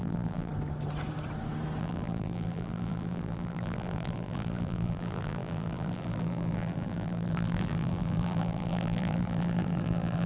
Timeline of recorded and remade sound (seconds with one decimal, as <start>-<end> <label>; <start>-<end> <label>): 0.0-0.5 remade; 0.5-1.8 recorded; 1.8-10.3 remade